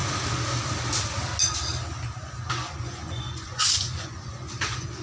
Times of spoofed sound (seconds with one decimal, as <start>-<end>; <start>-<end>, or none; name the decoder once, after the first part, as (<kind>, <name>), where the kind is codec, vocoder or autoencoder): 2.3-5.0 (vocoder, Vocos)